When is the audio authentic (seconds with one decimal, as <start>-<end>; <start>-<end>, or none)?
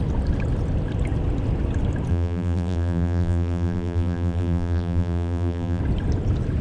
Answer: 0.0-2.1; 5.8-6.6